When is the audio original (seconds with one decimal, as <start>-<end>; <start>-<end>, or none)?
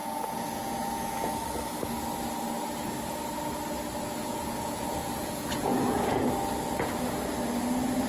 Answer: 1.4-4.2; 6.3-8.1